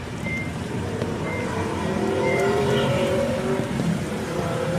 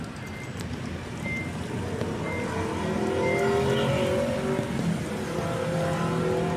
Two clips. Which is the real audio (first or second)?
second